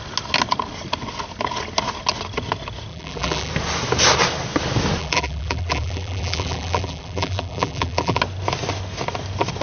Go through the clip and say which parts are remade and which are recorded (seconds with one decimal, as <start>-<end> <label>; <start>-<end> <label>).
0.0-2.9 recorded; 2.9-3.5 remade; 3.5-5.0 recorded; 5.0-8.2 remade; 8.2-9.6 recorded